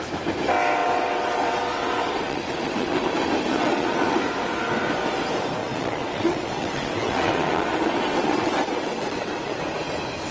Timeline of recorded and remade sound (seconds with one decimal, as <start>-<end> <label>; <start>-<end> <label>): 0.0-0.8 recorded; 0.8-3.1 remade; 3.1-3.5 recorded; 3.5-4.2 remade; 4.2-5.6 recorded; 5.6-9.6 remade; 9.6-10.3 recorded